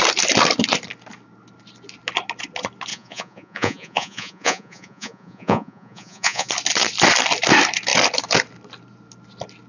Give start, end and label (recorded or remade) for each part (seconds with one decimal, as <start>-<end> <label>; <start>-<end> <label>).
0.0-2.9 recorded; 2.9-6.5 remade; 6.5-9.7 recorded